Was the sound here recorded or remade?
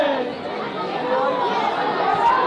recorded